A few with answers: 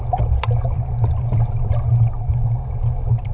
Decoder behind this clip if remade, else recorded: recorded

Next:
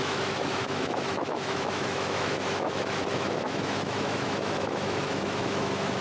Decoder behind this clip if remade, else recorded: remade, autoencoder, DAC-VAE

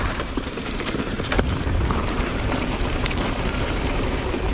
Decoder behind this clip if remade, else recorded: remade, vocoder, BigVGAN v2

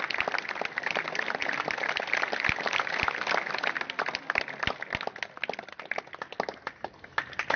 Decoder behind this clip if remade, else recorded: recorded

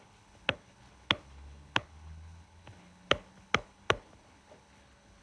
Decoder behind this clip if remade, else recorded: remade, codec, HILCodec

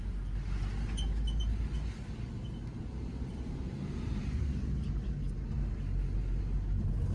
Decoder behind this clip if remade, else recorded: recorded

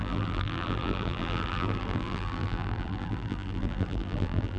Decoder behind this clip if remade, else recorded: remade, vocoder, BigVGAN v2